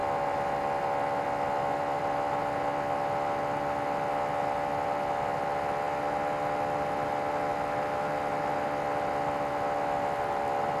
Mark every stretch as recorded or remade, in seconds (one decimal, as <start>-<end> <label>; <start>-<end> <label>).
0.0-10.8 recorded